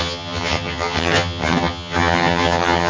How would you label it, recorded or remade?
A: remade